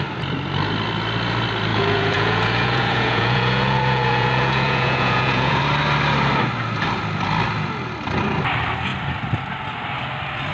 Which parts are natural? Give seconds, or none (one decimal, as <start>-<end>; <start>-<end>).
0.0-1.7; 5.6-10.5